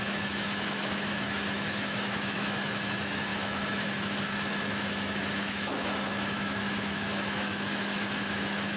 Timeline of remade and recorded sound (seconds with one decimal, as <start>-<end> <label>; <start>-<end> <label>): 0.0-8.8 remade